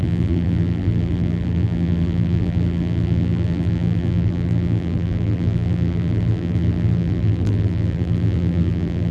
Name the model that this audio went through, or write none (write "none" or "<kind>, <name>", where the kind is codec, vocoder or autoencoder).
vocoder, BigVGAN v2